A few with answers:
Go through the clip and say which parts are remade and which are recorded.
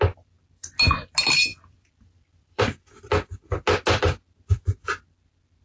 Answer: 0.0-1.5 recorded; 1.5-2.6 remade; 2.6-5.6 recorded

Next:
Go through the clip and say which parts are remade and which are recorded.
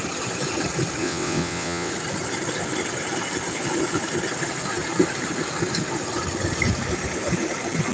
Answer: 0.0-1.0 recorded; 1.0-1.9 remade; 1.9-7.9 recorded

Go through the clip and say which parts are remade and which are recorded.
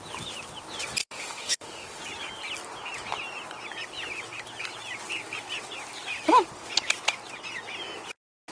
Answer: 0.0-1.0 recorded; 1.0-2.0 remade; 2.0-8.5 recorded